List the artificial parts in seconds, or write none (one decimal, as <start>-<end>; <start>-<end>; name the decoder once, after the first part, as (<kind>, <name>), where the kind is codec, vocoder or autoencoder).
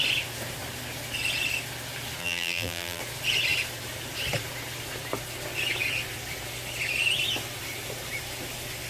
2.2-3.0 (vocoder, BigVGAN v2)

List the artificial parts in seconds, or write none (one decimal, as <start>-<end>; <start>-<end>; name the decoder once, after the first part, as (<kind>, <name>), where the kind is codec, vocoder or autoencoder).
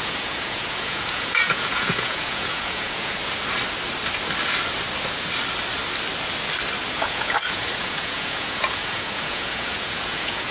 0.0-3.2 (vocoder, Vocos); 6.9-10.5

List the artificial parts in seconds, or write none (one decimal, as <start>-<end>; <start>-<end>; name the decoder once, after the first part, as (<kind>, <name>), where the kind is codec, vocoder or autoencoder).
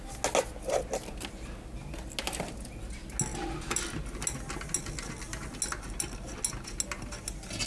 none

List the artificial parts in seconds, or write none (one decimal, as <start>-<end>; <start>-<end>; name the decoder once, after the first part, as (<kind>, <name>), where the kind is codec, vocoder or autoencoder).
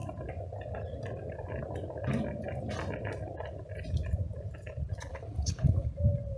5.1-5.9 (codec, HILCodec)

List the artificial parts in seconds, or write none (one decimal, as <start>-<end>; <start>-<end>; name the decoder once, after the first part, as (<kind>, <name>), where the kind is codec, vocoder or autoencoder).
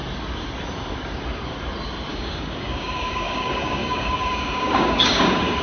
2.1-5.6 (codec, DAC)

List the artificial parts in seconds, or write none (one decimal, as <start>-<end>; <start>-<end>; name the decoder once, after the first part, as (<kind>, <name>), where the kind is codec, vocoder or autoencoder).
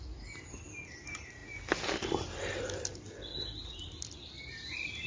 none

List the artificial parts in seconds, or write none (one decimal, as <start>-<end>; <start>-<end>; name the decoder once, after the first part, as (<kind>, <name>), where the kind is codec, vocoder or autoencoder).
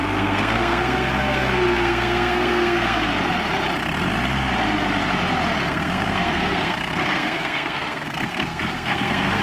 0.0-3.1 (codec, SNAC); 5.6-9.4